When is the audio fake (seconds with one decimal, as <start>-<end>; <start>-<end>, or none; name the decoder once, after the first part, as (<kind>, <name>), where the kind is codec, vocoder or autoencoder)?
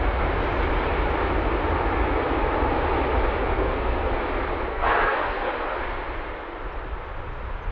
3.5-4.1 (codec, SNAC); 4.7-5.5